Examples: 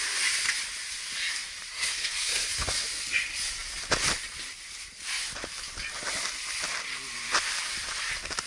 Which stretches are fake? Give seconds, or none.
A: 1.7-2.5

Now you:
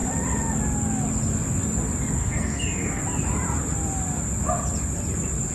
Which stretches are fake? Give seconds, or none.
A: 2.2-3.0

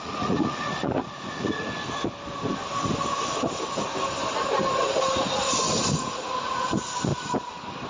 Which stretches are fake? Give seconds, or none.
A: 0.0-1.7; 5.9-7.1

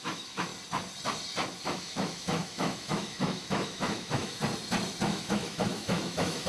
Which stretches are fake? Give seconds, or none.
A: 0.0-0.5; 1.6-4.4; 5.1-6.5

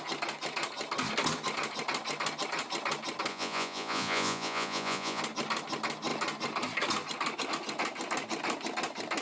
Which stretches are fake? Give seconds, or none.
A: 3.3-5.2

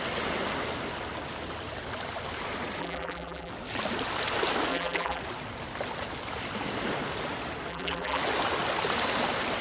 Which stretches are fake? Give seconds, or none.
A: 2.8-3.5; 4.7-5.2; 7.7-8.2

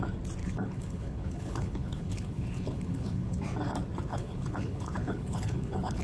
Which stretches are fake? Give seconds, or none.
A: 0.4-3.4; 4.1-6.0